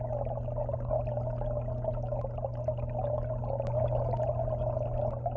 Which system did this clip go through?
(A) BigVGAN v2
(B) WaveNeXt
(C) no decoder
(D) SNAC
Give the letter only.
C